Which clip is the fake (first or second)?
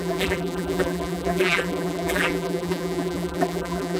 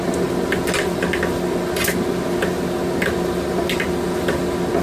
first